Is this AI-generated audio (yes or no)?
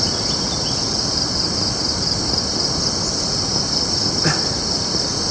no